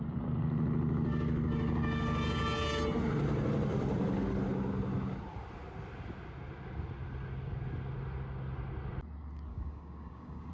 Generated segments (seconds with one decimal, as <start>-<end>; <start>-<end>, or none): 9.5-10.5